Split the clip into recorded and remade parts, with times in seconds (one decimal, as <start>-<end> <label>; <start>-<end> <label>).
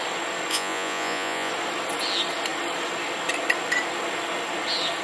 0.0-0.5 recorded; 0.5-1.5 remade; 1.5-5.0 recorded